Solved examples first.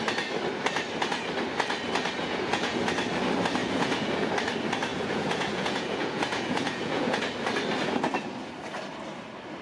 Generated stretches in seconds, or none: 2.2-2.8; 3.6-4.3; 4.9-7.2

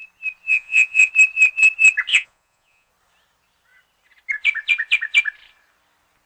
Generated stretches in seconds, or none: 0.5-1.1; 2.1-2.9

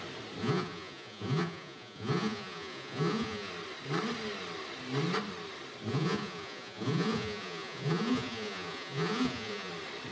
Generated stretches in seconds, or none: 0.4-3.5; 5.9-9.7

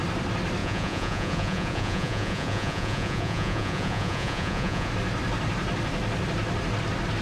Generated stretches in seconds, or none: 0.6-4.9

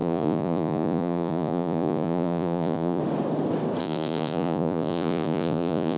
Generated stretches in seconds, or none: 0.0-3.0; 3.8-6.0

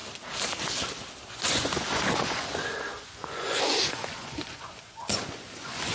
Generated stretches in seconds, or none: 1.3-5.9

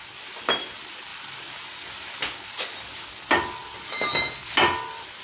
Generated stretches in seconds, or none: none